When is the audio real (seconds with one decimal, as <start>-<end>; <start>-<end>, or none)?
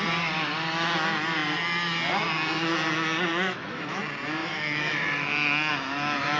0.0-3.3; 4.0-4.4; 5.7-6.4